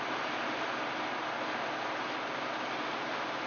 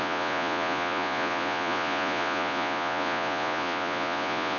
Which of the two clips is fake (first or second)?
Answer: second